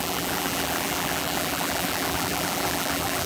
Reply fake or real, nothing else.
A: fake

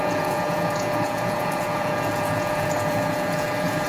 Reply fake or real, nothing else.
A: fake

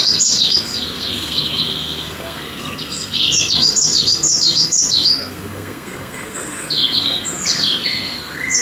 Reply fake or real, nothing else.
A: fake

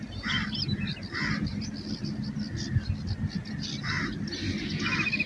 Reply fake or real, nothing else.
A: real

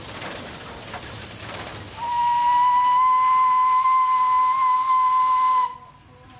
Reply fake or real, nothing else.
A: real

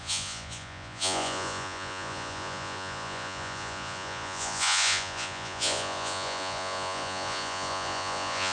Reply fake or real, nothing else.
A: fake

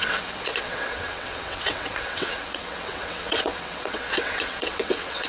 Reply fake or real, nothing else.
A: fake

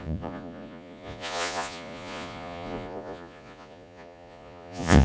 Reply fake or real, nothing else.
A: fake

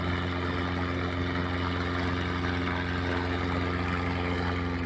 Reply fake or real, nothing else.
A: real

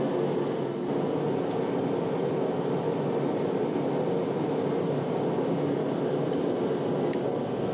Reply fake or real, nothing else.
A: real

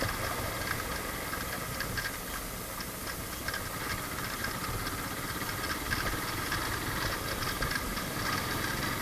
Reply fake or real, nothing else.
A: real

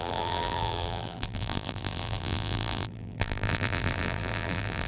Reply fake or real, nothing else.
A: fake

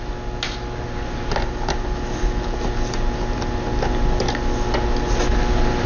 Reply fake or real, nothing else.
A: real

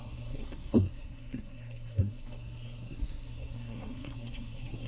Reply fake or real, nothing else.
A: fake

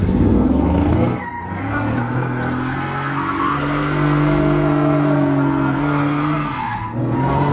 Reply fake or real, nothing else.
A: fake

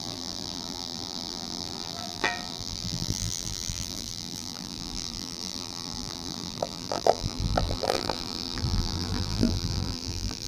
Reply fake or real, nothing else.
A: fake